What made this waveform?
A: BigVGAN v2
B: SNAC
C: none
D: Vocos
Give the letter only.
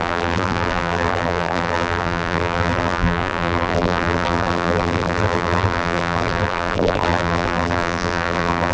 A